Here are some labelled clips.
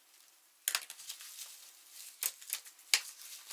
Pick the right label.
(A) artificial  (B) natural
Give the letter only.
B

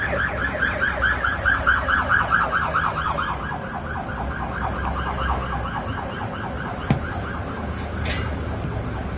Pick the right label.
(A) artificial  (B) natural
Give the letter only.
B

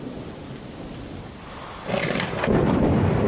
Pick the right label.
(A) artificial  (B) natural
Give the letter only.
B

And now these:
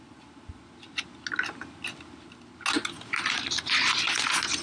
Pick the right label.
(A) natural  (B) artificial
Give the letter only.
A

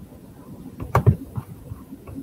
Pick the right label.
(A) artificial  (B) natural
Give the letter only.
A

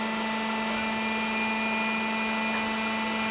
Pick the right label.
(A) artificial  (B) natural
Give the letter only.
B